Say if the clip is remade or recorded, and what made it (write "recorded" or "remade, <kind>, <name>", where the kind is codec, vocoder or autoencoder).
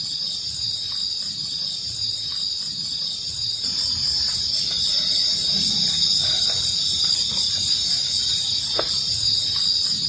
recorded